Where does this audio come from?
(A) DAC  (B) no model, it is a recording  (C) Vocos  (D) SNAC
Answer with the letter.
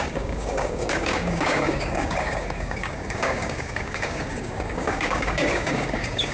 A